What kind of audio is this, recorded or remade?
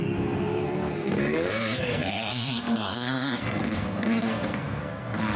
remade